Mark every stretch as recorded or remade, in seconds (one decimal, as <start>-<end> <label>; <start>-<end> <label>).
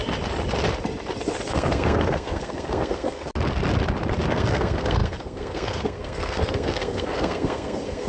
0.0-1.5 recorded; 1.5-3.3 remade; 3.3-4.3 recorded; 4.3-8.1 remade